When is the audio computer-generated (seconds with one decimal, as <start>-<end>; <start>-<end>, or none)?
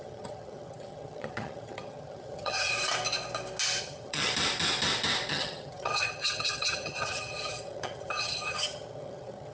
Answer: 0.0-2.7; 3.8-4.3; 5.3-9.5